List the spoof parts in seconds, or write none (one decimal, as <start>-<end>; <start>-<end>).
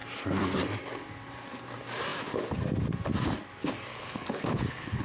3.9-5.0